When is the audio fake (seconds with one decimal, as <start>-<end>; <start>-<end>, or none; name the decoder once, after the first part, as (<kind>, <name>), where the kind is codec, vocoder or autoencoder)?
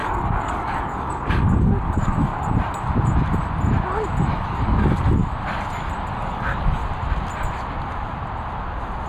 0.0-2.3 (codec, DAC); 4.3-5.2; 6.1-6.8